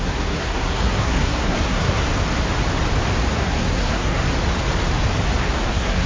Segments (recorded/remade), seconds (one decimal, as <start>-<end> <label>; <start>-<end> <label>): 0.0-2.1 remade; 2.1-3.3 recorded; 3.3-4.3 remade; 4.3-5.4 recorded; 5.4-6.1 remade